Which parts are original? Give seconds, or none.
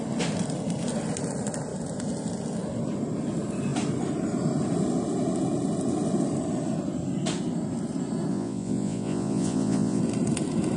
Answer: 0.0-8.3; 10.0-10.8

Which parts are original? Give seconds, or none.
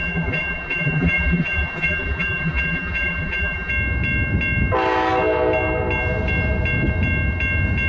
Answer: 3.7-7.9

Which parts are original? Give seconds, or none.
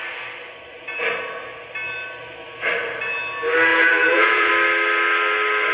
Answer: 0.0-3.7; 4.5-5.7